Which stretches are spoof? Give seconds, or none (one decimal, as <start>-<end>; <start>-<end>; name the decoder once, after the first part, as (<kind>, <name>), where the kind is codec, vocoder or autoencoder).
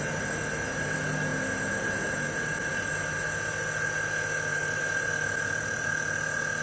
4.5-5.1 (vocoder, BigVGAN v2)